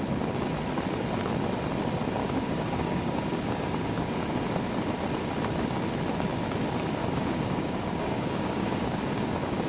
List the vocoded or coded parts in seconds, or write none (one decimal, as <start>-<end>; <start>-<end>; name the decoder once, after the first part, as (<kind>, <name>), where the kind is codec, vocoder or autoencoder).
2.2-4.4 (codec, DAC); 7.0-9.7